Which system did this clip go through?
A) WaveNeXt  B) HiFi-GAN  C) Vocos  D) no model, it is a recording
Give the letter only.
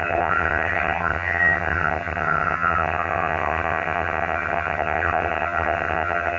B